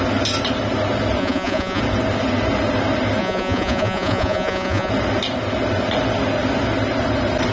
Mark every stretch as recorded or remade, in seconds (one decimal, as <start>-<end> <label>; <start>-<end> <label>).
0.0-1.2 recorded; 1.2-1.8 remade; 1.8-3.2 recorded; 3.2-4.9 remade; 4.9-7.5 recorded